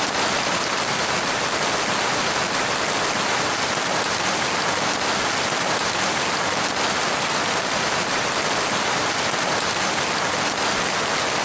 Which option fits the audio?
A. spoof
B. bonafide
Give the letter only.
B